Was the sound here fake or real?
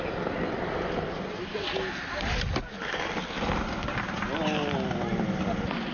real